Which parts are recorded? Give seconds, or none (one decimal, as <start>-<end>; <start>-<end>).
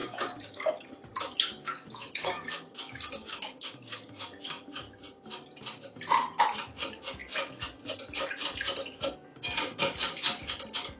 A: 0.5-1.1; 5.0-11.0